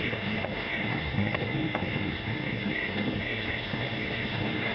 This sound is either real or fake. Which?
fake